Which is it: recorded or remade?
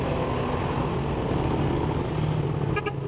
recorded